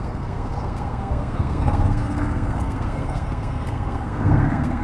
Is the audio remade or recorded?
remade